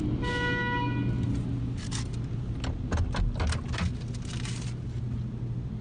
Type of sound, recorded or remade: recorded